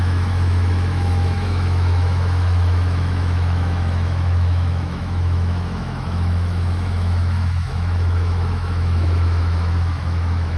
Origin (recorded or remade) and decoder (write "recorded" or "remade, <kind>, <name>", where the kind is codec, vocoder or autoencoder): remade, autoencoder, DAC-VAE